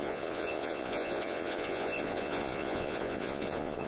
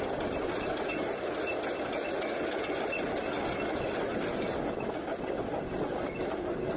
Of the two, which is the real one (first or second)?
second